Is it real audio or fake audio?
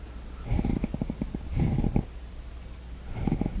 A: real